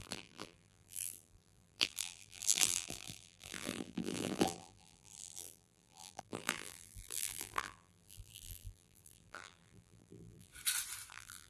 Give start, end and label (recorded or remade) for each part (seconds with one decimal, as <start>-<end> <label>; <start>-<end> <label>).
0.0-10.5 remade; 10.5-11.1 recorded; 11.1-11.5 remade

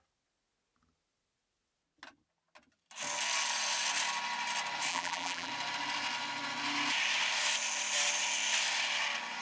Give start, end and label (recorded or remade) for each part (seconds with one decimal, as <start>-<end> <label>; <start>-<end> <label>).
0.0-4.9 recorded; 4.9-5.5 remade; 5.5-9.4 recorded

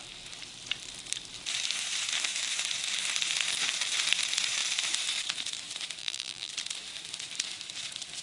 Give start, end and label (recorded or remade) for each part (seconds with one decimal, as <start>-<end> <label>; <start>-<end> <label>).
0.0-6.0 recorded; 6.0-6.5 remade; 6.5-8.2 recorded